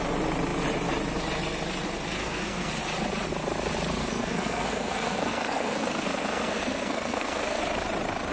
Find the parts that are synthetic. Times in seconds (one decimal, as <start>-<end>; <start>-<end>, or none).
2.2-2.7; 4.0-7.6